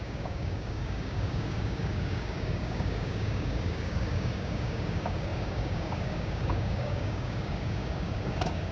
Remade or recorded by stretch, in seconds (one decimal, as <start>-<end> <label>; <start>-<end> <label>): 0.0-8.7 remade